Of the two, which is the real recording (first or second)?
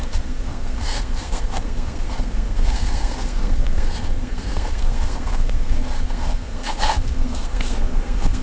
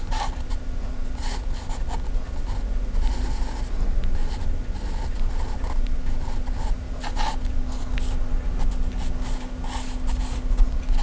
second